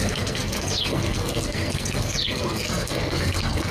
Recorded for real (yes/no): no